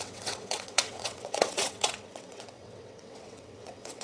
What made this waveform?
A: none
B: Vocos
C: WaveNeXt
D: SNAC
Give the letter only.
C